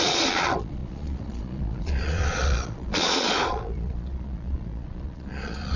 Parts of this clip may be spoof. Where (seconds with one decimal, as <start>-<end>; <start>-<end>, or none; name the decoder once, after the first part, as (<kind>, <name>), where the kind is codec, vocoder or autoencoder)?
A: 0.0-5.8 (vocoder, Vocos)